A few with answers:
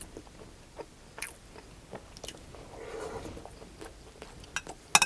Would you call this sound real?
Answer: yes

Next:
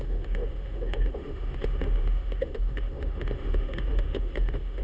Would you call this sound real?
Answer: no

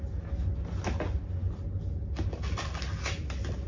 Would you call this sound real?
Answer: yes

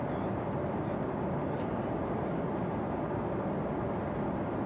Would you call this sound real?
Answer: yes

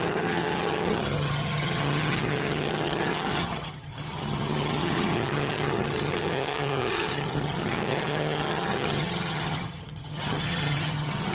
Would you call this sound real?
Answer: no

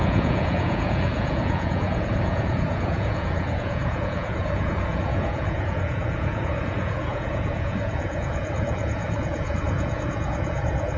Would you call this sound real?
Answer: no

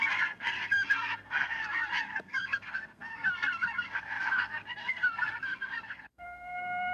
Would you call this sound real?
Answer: no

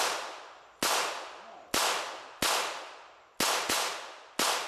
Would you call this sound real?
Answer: yes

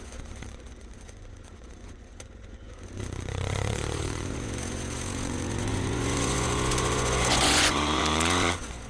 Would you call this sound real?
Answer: no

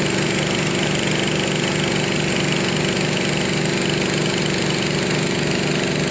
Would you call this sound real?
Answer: yes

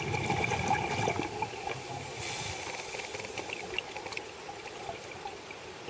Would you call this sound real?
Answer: yes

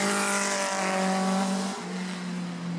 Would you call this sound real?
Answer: yes